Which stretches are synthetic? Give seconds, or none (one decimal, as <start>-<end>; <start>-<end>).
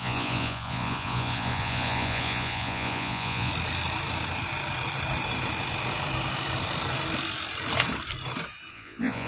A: 0.0-3.5; 8.7-9.3